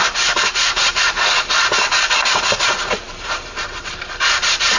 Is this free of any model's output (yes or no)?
no